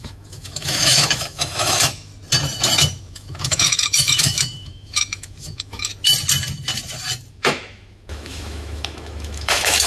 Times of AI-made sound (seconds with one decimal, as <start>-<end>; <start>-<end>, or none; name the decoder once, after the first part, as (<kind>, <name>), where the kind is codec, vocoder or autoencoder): 0.0-2.1 (autoencoder, DAC-VAE); 3.0-5.9; 7.3-9.9